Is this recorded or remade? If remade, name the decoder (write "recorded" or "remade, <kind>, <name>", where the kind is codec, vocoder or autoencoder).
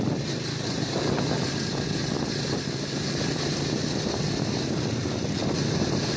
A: remade, vocoder, BigVGAN v2